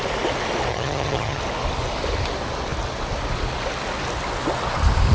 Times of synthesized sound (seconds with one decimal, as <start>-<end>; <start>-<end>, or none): 0.7-1.4